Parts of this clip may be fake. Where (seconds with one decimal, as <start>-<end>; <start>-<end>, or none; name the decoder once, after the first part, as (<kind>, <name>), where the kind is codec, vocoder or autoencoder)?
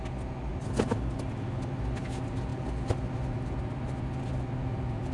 0.5-1.3 (vocoder, BigVGAN v2)